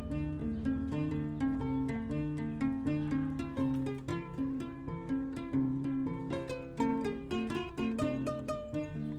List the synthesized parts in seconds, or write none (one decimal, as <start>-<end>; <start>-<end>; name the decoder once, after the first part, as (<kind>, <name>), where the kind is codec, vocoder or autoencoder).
0.4-1.1 (vocoder, BigVGAN v2); 4.1-6.2; 6.9-9.2